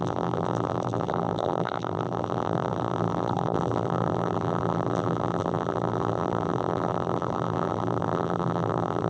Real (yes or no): no